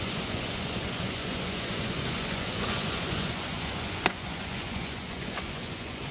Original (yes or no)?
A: no